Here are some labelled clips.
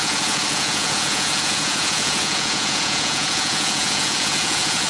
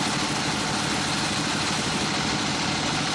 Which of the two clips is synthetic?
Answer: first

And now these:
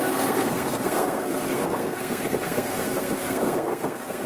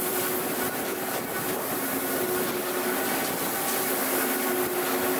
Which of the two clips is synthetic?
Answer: first